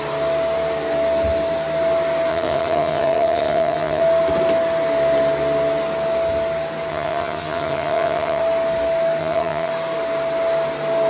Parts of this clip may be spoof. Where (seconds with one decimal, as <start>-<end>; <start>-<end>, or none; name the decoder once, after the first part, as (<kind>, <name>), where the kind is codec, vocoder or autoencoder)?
2.3-4.0 (vocoder, HiFi-GAN); 6.9-8.4; 9.2-9.7